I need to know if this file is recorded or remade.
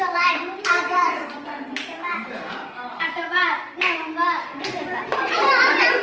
remade